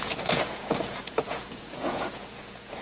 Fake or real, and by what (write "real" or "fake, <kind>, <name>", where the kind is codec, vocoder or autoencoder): fake, vocoder, Vocos